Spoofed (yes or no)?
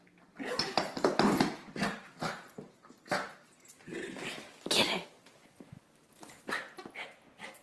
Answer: no